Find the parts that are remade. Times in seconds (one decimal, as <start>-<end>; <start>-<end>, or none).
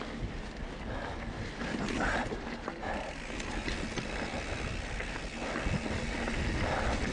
none